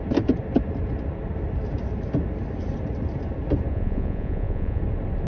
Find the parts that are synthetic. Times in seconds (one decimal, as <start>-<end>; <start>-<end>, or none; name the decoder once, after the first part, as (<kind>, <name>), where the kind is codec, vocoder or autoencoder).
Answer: 3.7-4.8 (vocoder, Vocos)